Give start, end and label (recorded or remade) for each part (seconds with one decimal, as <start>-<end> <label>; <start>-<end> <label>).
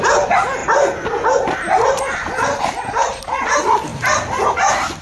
0.0-5.0 recorded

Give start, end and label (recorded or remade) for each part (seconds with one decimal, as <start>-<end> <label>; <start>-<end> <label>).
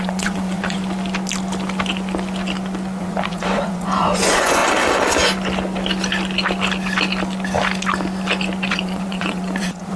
0.0-0.8 remade; 0.8-3.0 recorded; 3.0-4.6 remade; 4.6-8.7 recorded; 8.7-10.0 remade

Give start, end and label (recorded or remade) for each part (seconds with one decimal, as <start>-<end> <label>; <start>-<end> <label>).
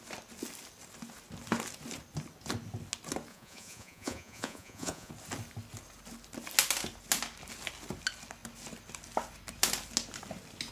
0.0-3.3 recorded; 3.3-5.1 remade; 5.1-10.7 recorded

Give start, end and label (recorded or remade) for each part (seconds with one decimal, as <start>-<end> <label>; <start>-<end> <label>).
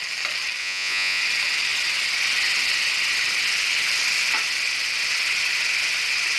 0.0-0.6 recorded; 0.6-1.2 remade; 1.2-6.4 recorded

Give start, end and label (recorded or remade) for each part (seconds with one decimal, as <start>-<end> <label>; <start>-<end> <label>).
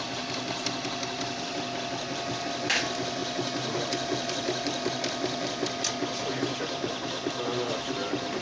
0.0-8.4 recorded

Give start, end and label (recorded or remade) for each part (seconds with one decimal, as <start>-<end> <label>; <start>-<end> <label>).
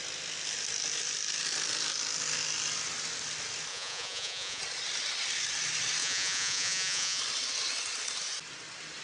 0.0-3.7 recorded; 3.7-4.6 remade; 4.6-6.0 recorded; 6.0-7.2 remade; 7.2-9.0 recorded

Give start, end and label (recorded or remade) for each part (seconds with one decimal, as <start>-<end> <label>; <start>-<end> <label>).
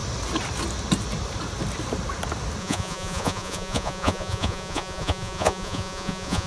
0.0-2.6 recorded; 2.6-6.5 remade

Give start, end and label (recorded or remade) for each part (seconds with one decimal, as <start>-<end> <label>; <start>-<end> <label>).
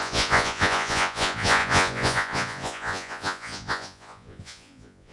0.0-5.1 remade